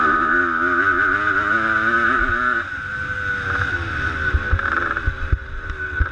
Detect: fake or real real